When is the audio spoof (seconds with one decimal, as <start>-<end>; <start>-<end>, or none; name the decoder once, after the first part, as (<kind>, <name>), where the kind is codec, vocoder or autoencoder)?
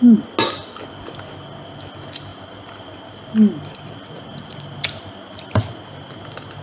2.3-6.6 (vocoder, BigVGAN v2)